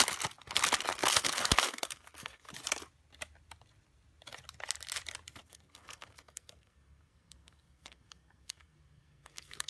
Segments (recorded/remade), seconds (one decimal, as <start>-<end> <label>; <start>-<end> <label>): 0.0-1.0 recorded; 1.0-2.5 remade; 2.5-5.4 recorded; 5.4-9.7 remade